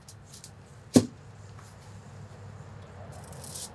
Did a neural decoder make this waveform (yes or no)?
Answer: no